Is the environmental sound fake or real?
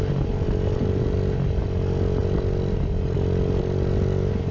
real